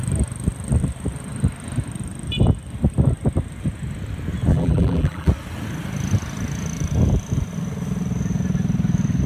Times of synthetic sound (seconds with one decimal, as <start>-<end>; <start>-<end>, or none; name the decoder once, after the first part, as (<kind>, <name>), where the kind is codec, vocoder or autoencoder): 4.5-5.3 (vocoder, BigVGAN v2)